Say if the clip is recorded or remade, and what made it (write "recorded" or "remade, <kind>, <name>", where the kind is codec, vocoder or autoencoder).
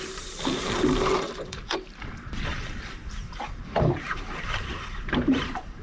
remade, vocoder, BigVGAN v2